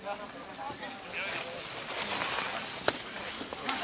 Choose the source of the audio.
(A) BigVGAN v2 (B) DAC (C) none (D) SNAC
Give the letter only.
C